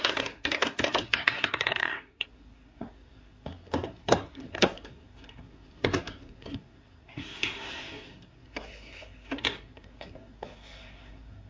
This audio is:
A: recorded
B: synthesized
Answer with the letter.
B